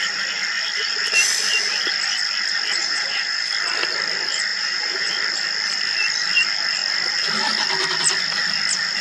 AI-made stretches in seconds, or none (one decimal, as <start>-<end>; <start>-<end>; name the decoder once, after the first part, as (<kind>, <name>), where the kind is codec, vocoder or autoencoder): 2.8-3.5 (vocoder, Vocos); 4.5-5.1